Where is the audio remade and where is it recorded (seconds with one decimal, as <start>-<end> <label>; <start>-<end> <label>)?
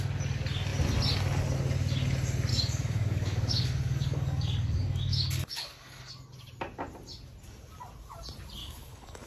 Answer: 0.0-2.5 recorded; 2.5-6.1 remade; 6.1-8.6 recorded; 8.6-9.3 remade